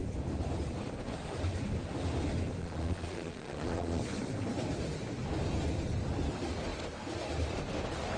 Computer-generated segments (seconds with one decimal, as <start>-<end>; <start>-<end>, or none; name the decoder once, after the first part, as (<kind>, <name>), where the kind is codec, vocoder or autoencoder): 2.6-4.0 (vocoder, Vocos)